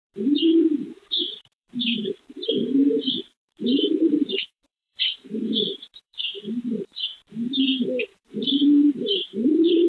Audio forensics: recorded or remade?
remade